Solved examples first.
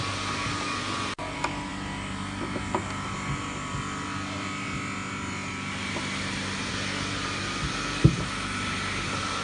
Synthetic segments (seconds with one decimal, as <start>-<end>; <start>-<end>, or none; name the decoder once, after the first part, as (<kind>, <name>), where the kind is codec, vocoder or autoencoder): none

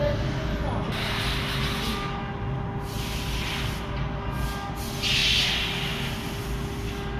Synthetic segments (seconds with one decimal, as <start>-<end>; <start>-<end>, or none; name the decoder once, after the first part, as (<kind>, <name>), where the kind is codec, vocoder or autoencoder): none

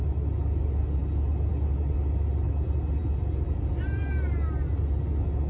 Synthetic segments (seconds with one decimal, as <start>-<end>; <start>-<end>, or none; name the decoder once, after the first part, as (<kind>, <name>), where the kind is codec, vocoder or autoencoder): none